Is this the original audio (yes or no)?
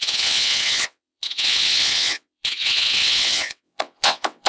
no